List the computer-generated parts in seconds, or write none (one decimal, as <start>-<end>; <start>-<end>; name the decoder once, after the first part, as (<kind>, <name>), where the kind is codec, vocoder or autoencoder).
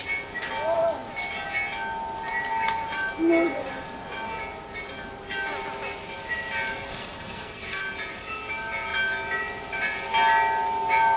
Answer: 6.7-7.8 (codec, SNAC)